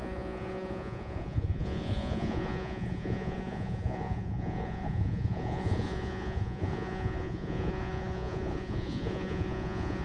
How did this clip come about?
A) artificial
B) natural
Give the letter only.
A